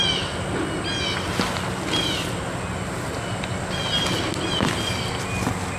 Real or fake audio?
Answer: real